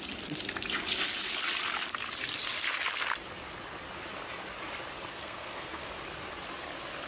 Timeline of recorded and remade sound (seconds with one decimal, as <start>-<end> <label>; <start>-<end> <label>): 0.0-5.1 recorded; 5.1-5.9 remade; 5.9-7.1 recorded